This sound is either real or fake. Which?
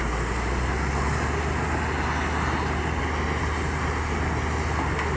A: real